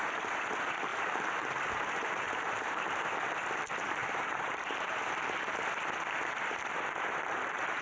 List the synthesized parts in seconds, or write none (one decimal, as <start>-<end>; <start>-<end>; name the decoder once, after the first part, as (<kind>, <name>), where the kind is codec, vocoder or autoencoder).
0.9-2.9 (vocoder, BigVGAN v2); 4.0-5.1